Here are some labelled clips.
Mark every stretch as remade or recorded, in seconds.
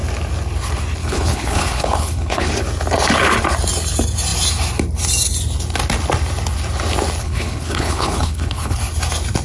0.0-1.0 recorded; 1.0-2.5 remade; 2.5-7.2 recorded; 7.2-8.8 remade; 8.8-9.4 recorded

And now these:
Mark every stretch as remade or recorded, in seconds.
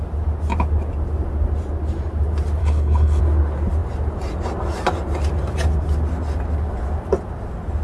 0.0-2.6 recorded; 2.6-3.2 remade; 3.2-7.8 recorded